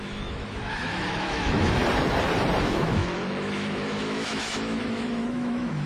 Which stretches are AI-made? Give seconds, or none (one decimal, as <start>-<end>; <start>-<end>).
0.0-1.8; 2.6-5.9